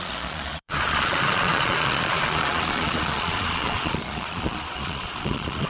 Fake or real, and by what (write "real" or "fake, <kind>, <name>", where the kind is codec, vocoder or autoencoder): fake, vocoder, Vocos